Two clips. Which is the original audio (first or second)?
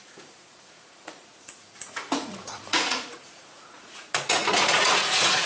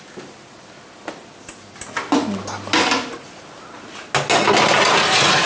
second